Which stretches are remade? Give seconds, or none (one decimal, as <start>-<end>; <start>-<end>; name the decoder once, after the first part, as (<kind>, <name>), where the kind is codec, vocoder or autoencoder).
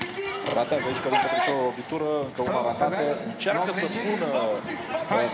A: none